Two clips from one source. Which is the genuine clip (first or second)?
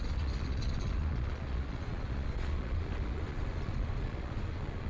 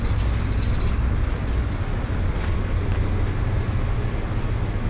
second